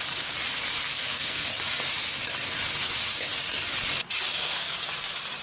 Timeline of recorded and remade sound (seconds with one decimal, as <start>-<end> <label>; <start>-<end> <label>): 0.0-0.9 recorded; 0.9-1.5 remade; 1.5-4.3 recorded; 4.3-4.8 remade; 4.8-5.4 recorded